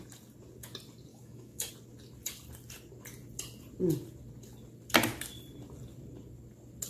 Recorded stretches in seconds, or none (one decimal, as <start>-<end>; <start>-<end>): 0.0-1.1; 1.7-6.9